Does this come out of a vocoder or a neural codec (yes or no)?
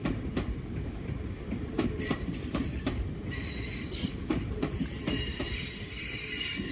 yes